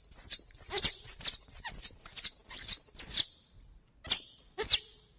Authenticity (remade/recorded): recorded